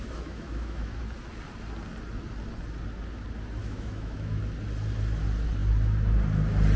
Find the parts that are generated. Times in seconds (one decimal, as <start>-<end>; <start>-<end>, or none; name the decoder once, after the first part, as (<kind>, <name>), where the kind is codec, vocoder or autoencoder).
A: 0.0-1.0 (autoencoder, DAC-VAE); 3.6-4.4